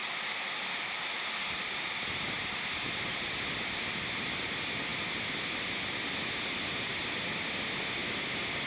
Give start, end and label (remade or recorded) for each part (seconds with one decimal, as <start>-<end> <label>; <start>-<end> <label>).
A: 0.0-8.7 recorded